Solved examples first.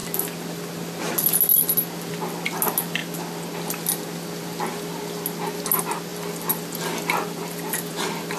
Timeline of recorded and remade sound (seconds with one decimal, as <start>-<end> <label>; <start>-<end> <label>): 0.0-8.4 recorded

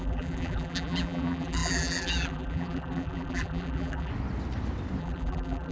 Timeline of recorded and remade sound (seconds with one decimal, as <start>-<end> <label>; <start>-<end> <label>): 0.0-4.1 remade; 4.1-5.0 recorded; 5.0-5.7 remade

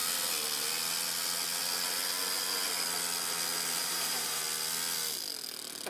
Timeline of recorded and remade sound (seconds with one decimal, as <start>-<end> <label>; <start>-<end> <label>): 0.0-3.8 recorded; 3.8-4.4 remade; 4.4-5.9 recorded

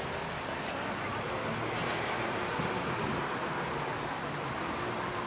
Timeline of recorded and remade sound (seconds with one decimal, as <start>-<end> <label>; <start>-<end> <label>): 0.0-1.8 recorded; 1.8-2.5 remade; 2.5-5.3 recorded

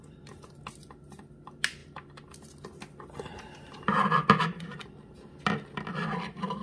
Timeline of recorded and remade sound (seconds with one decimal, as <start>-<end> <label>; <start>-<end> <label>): 0.0-6.6 recorded

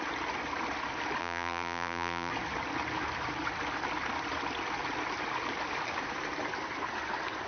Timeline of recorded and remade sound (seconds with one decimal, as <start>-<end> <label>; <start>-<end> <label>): 0.0-1.2 recorded; 1.2-2.3 remade; 2.3-7.5 recorded